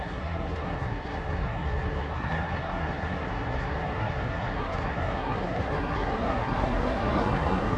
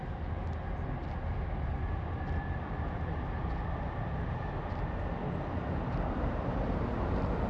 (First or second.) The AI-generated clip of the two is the first